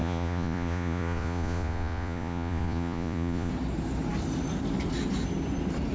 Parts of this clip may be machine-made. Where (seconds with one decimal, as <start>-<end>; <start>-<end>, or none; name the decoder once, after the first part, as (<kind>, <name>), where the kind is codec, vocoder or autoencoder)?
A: 0.0-3.5 (vocoder, Vocos)